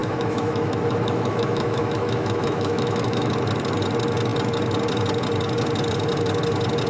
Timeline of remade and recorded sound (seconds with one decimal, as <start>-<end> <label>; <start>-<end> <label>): 0.0-3.3 remade; 3.3-6.9 recorded